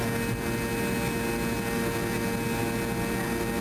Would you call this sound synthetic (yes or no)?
no